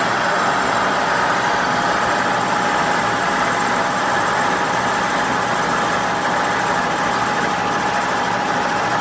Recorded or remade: remade